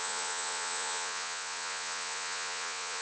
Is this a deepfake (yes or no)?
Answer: yes